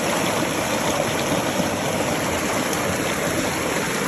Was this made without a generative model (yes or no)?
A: yes